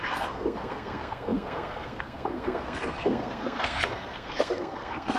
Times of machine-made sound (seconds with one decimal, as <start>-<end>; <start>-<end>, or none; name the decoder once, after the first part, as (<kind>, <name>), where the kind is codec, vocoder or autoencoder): 0.0-5.2 (codec, SNAC)